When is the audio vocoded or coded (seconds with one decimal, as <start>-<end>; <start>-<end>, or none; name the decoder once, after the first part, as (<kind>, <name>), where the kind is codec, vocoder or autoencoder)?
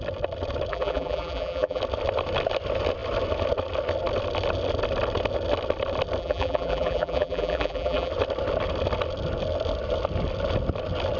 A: 0.7-1.8 (vocoder, BigVGAN v2); 6.2-8.1